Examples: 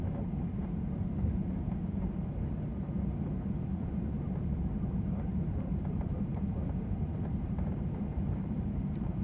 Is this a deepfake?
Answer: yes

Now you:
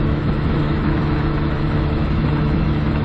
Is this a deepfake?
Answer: yes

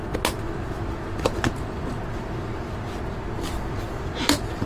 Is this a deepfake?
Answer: no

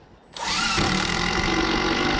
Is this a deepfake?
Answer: no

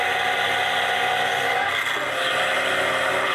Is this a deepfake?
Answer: no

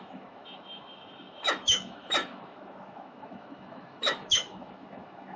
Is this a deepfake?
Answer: yes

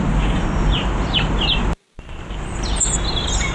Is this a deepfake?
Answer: no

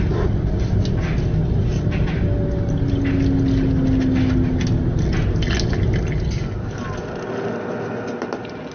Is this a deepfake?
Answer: no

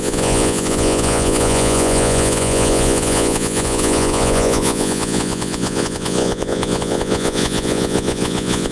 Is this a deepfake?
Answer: yes